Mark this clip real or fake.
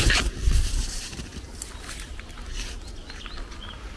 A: real